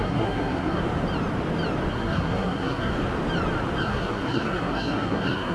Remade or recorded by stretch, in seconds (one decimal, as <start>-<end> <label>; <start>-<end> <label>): 0.0-0.8 remade; 0.8-1.9 recorded; 1.9-2.9 remade; 2.9-3.8 recorded; 3.8-5.5 remade